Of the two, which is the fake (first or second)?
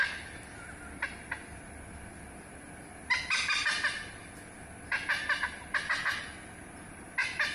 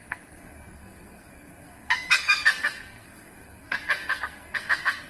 second